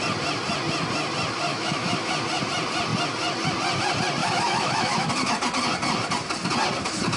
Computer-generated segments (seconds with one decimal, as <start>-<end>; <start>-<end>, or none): 1.5-2.1; 4.2-5.1

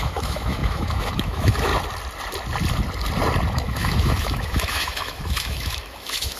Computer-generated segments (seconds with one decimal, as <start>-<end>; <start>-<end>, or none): 0.0-1.7; 3.5-6.4

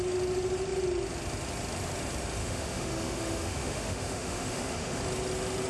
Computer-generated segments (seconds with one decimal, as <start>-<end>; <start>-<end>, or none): 2.4-5.0

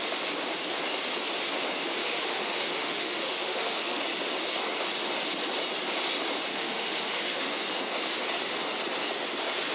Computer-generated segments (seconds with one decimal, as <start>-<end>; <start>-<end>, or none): 2.0-4.0; 6.5-7.5

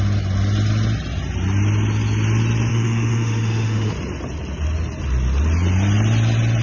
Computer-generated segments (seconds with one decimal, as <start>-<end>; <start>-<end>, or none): 2.7-3.9